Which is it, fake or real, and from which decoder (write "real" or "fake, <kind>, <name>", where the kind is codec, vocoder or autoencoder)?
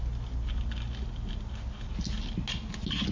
real